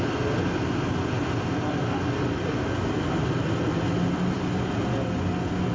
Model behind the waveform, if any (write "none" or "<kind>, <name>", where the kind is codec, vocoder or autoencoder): none